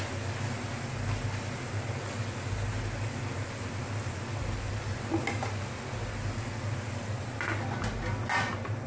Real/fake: real